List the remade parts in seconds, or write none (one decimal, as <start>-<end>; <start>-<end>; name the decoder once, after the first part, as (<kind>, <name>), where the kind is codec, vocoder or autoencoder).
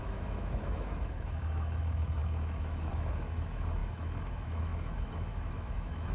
0.0-6.1 (autoencoder, DAC-VAE)